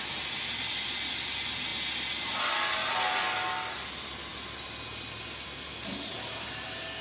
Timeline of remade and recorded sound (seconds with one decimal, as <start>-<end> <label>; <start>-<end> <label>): 0.0-7.0 recorded